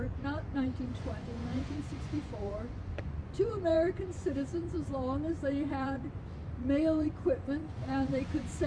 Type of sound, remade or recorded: remade